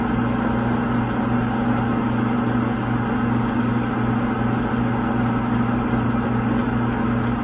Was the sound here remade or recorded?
recorded